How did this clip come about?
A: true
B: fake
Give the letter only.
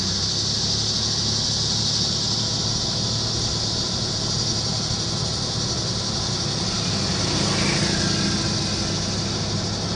A